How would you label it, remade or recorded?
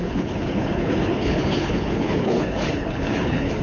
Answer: remade